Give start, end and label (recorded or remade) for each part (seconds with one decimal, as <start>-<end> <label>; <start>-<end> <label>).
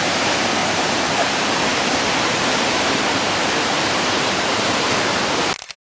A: 0.0-1.7 recorded; 1.7-5.2 remade; 5.2-5.8 recorded